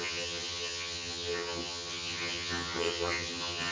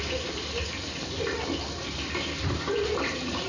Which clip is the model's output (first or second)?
first